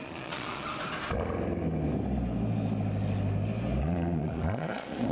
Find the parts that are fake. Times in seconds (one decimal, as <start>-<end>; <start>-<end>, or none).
0.0-0.7; 3.8-5.1